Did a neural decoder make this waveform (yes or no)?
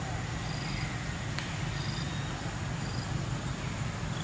no